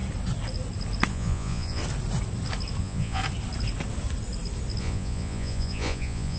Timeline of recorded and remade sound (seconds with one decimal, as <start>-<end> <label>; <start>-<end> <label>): 0.0-1.1 recorded; 1.1-1.8 remade; 1.8-2.8 recorded; 2.8-3.2 remade; 3.2-4.8 recorded; 4.8-6.4 remade